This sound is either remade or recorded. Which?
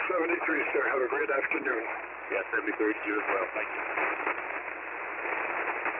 recorded